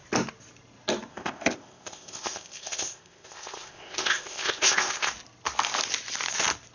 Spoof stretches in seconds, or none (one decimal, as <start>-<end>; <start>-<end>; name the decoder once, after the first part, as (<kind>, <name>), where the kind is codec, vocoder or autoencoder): 1.1-5.1 (codec, ZipCodec)